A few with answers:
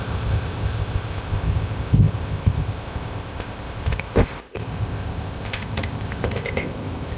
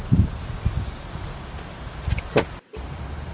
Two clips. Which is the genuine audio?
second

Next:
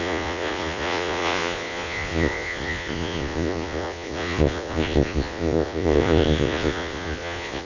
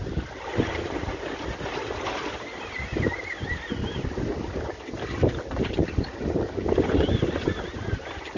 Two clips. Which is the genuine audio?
second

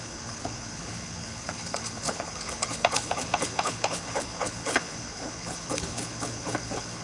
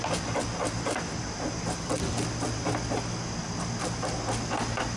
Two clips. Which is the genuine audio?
second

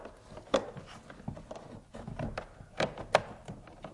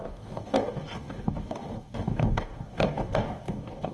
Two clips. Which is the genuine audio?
first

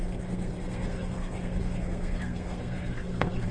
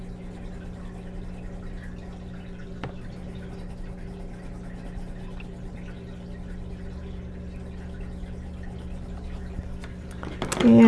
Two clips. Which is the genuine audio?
second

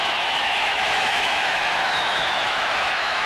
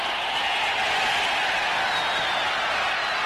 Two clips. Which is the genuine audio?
second